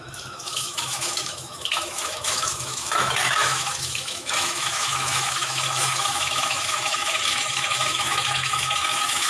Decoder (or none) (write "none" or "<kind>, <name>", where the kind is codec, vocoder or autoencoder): autoencoder, DAC-VAE